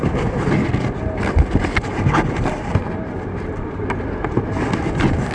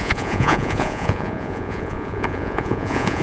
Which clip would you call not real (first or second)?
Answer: second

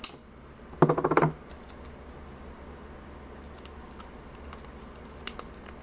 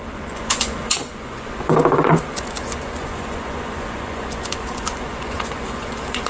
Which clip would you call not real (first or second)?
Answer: second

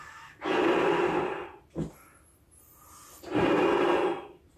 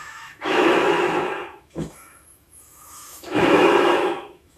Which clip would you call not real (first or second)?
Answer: second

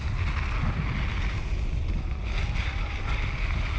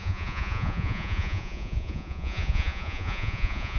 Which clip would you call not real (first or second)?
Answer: second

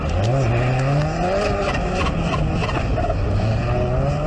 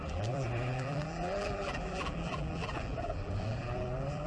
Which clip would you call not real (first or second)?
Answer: second